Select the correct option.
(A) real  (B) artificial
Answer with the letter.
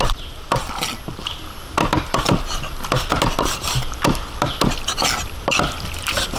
A